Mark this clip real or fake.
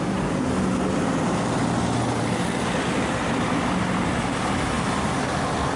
real